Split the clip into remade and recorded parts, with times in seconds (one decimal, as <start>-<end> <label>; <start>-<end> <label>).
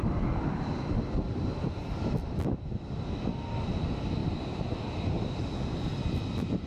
0.0-4.2 recorded; 4.2-4.9 remade; 4.9-6.7 recorded